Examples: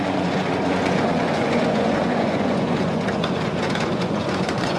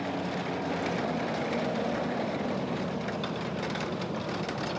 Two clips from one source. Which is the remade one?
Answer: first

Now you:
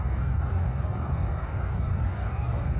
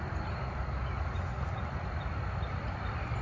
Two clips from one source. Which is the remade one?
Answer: first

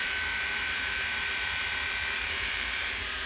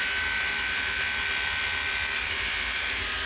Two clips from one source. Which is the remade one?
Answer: first